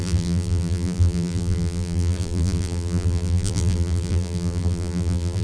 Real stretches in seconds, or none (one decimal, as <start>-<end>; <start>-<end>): none